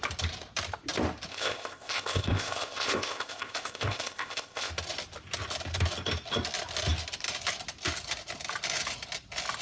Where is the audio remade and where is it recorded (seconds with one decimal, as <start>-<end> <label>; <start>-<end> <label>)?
0.0-1.3 recorded; 1.3-4.7 remade; 4.7-9.6 recorded